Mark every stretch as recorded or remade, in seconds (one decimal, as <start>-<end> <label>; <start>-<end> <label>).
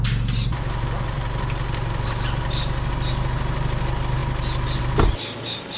0.0-0.5 recorded; 0.5-2.9 remade; 2.9-5.8 recorded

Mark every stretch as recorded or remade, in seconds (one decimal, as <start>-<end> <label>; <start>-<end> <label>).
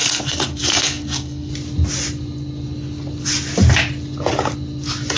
0.0-1.5 remade; 1.5-5.2 recorded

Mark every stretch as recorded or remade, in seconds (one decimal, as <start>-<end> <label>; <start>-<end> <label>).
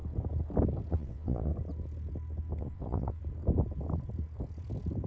0.0-0.9 recorded; 0.9-1.5 remade; 1.5-2.6 recorded; 2.6-3.2 remade; 3.2-5.1 recorded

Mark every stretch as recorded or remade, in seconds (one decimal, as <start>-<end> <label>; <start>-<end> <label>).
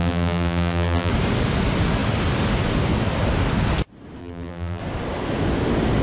0.0-1.1 remade; 1.1-4.2 recorded; 4.2-4.8 remade; 4.8-6.0 recorded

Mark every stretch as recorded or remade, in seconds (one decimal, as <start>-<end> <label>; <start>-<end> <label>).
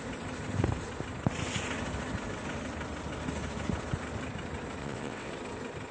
0.0-4.8 recorded; 4.8-5.3 remade; 5.3-5.9 recorded